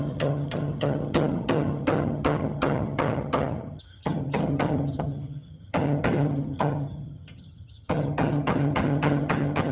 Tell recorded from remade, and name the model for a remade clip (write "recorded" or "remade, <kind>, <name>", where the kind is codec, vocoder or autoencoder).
remade, vocoder, HiFi-GAN